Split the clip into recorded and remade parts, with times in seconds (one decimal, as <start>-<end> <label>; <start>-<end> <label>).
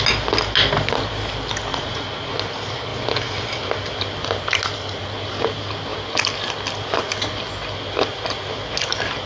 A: 0.0-1.7 recorded; 1.7-2.3 remade; 2.3-9.3 recorded